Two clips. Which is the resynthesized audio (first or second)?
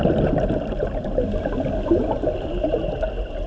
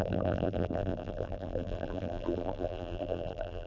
second